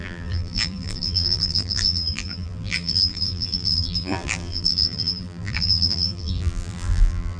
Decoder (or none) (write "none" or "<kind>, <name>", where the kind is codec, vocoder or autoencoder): vocoder, BigVGAN v2